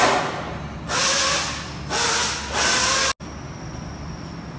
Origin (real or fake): real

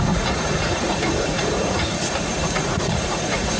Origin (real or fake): fake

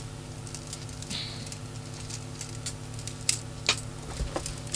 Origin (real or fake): real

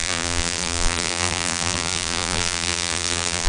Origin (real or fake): fake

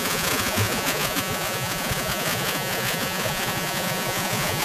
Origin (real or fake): fake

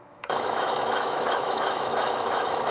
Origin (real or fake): fake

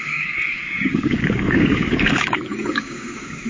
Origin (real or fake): fake